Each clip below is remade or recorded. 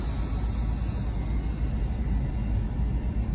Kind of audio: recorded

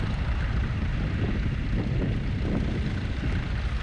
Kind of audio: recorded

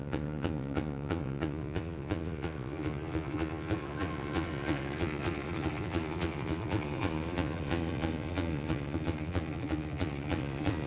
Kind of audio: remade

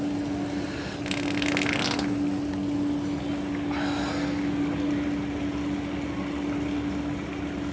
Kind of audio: recorded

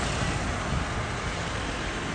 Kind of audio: recorded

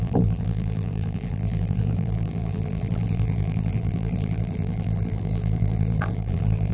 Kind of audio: remade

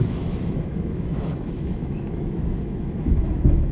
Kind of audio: remade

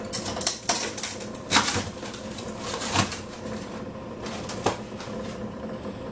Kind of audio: remade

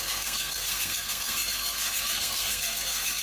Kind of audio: remade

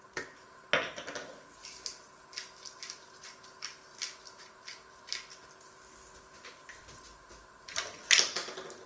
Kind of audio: recorded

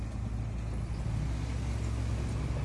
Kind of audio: recorded